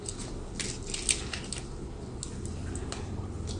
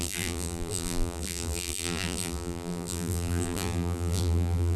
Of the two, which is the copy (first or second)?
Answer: second